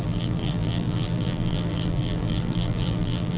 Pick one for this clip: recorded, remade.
remade